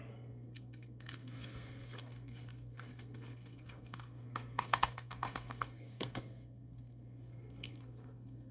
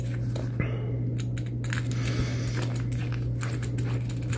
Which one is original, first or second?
second